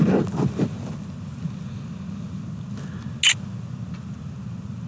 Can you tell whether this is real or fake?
real